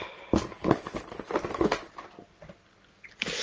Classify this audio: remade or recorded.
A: recorded